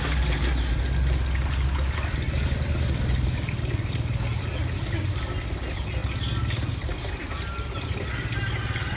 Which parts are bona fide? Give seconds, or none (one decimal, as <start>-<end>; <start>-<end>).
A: 0.0-9.0